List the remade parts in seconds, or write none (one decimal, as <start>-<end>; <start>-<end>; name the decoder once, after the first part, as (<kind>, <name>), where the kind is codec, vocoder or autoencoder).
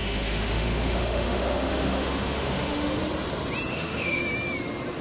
0.0-3.0 (autoencoder, DAC-VAE); 3.7-4.2